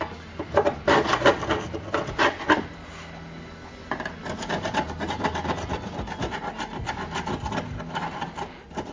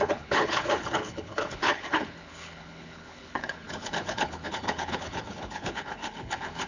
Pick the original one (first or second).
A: first